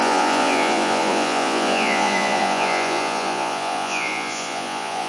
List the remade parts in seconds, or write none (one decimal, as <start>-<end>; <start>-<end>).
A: 0.0-5.1